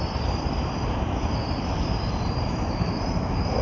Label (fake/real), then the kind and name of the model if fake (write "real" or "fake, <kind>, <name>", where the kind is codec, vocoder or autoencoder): fake, vocoder, BigVGAN v2